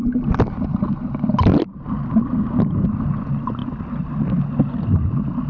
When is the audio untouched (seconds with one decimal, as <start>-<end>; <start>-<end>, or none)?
0.0-5.5